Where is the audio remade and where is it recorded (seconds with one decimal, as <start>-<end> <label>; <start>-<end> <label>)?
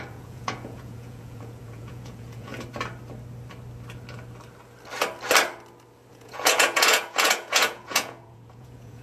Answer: 0.0-2.5 remade; 2.5-6.1 recorded; 6.1-9.0 remade